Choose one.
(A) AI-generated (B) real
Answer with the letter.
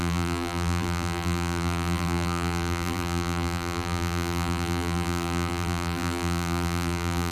A